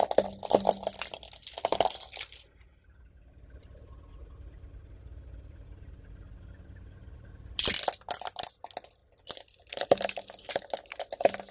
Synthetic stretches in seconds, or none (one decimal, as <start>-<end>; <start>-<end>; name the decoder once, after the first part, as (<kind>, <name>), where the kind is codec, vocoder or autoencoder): none